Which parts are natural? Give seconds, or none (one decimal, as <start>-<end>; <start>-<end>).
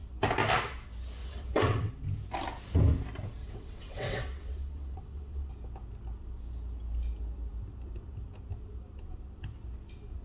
0.0-1.2; 1.9-3.4; 5.5-10.2